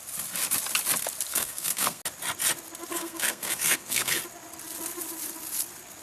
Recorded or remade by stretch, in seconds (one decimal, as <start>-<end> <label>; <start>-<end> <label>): 0.0-1.3 recorded; 1.3-2.0 remade; 2.0-2.9 recorded; 2.9-4.2 remade; 4.2-6.0 recorded